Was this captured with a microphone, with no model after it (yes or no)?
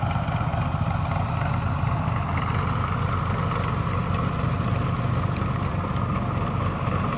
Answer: yes